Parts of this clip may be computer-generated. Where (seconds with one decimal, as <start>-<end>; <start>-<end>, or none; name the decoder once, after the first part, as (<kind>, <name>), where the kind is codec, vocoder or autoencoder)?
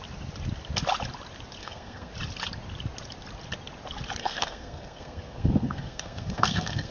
1.6-2.1 (codec, SNAC); 4.2-6.9